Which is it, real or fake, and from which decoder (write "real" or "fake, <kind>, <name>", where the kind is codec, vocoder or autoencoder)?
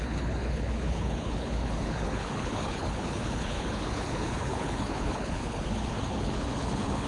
fake, codec, HILCodec